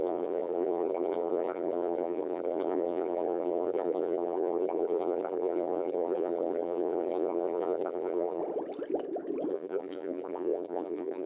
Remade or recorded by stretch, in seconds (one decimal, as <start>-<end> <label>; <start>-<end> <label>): 0.0-8.4 remade; 8.4-9.5 recorded; 9.5-11.3 remade